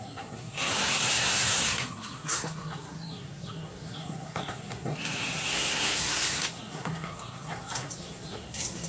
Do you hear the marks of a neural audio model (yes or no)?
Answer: yes